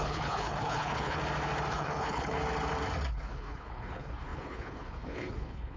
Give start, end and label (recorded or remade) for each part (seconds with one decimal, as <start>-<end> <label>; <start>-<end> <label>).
0.0-1.2 remade; 1.2-1.7 recorded; 1.7-2.4 remade; 2.4-3.1 recorded; 3.1-5.8 remade